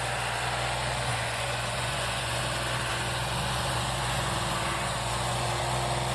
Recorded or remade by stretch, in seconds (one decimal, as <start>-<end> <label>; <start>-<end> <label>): 0.0-1.1 recorded; 1.1-2.4 remade; 2.4-2.9 recorded; 2.9-5.6 remade; 5.6-6.1 recorded